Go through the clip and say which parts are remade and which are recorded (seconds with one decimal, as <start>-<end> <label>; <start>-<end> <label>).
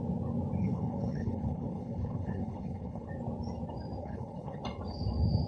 0.0-0.6 recorded; 0.6-3.1 remade; 3.1-4.0 recorded; 4.0-4.6 remade; 4.6-5.5 recorded